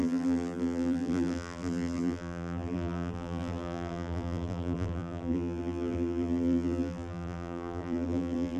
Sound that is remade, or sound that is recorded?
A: remade